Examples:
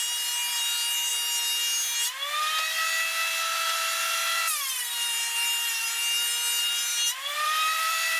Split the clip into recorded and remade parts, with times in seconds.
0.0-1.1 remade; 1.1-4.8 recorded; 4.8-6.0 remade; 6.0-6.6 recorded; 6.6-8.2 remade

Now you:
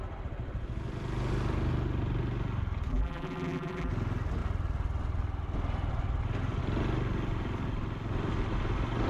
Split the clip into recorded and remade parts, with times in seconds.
0.0-2.9 recorded; 2.9-3.9 remade; 3.9-9.1 recorded

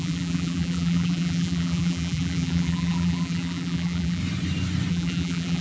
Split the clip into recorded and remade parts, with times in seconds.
0.0-4.2 remade; 4.2-4.9 recorded; 4.9-5.6 remade

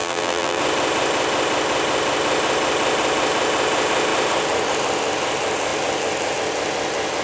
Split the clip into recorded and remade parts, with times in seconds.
0.0-0.6 remade; 0.6-7.2 recorded

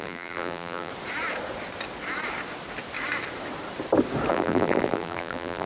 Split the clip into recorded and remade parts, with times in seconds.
0.0-0.9 remade; 0.9-4.3 recorded; 4.3-5.7 remade

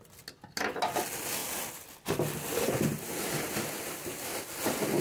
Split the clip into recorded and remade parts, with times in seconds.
0.0-5.0 recorded

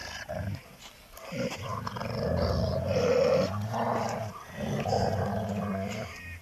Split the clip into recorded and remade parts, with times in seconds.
0.0-0.6 remade; 0.6-6.4 recorded

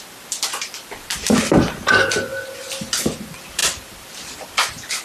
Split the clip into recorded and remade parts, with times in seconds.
0.0-2.3 remade; 2.3-3.2 recorded; 3.2-5.0 remade